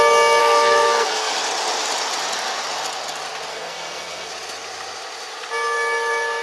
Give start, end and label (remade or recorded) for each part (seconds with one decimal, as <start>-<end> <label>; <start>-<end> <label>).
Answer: 0.0-0.4 recorded; 0.4-1.3 remade; 1.3-3.5 recorded; 3.5-4.3 remade; 4.3-6.4 recorded

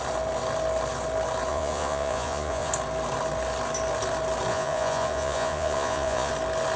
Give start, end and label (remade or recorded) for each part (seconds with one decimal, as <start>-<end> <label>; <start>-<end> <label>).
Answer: 0.0-1.5 recorded; 1.5-2.7 remade; 2.7-4.5 recorded; 4.5-6.3 remade; 6.3-6.8 recorded

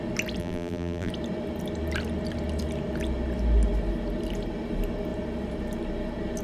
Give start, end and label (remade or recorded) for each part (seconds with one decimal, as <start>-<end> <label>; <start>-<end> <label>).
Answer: 0.0-0.4 recorded; 0.4-1.1 remade; 1.1-6.4 recorded

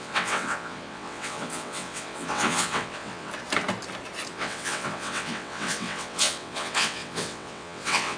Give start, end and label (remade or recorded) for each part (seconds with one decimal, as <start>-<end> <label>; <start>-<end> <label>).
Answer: 0.0-3.3 remade; 3.3-4.3 recorded; 4.3-8.2 remade

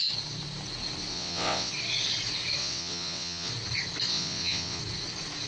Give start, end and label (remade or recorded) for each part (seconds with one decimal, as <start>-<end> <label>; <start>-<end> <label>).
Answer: 0.0-1.1 recorded; 1.1-1.7 remade; 1.7-2.6 recorded; 2.6-3.5 remade; 3.5-4.1 recorded; 4.1-4.8 remade; 4.8-5.5 recorded

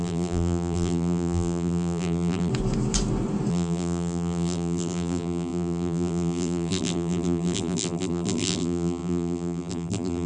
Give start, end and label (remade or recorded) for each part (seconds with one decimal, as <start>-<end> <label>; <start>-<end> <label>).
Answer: 0.0-2.5 remade; 2.5-3.5 recorded; 3.5-10.3 remade

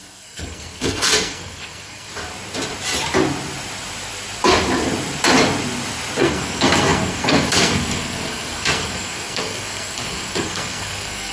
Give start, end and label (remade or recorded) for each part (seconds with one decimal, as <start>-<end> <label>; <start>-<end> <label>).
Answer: 0.0-2.1 remade; 2.1-6.2 recorded; 6.2-11.3 remade

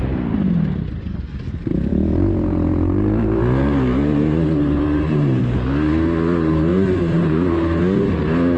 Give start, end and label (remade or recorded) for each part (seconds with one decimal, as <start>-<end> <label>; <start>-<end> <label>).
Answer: 0.0-1.9 recorded; 1.9-5.4 remade; 5.4-6.7 recorded; 6.7-7.8 remade; 7.8-8.6 recorded